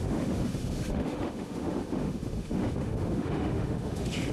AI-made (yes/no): yes